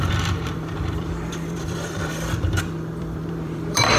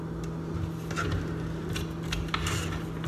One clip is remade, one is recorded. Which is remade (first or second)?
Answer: first